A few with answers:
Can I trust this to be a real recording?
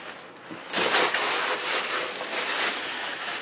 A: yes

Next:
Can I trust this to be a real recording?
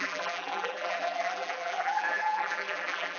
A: no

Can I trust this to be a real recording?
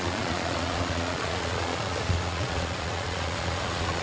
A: no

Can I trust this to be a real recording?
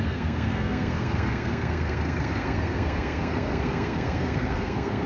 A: no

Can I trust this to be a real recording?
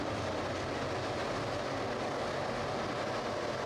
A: yes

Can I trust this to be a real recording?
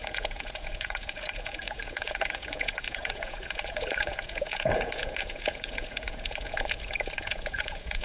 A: no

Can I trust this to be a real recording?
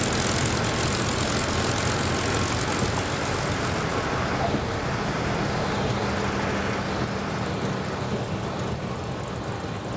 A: yes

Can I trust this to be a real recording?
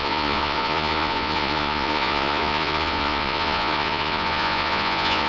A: no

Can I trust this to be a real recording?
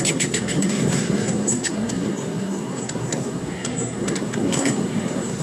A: no